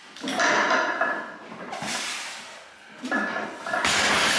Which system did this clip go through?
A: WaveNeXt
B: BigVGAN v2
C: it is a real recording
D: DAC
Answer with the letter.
C